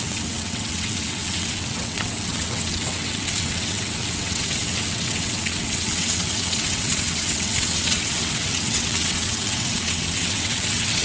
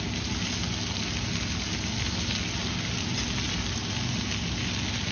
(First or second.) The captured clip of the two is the second